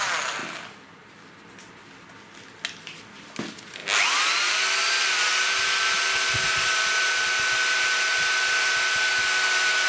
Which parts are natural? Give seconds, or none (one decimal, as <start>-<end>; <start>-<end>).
0.0-9.9